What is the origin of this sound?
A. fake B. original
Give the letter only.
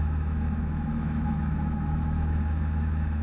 A